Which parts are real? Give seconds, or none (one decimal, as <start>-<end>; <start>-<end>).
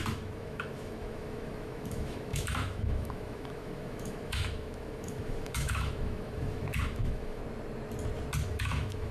7.4-8.4